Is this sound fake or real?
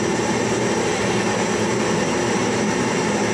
fake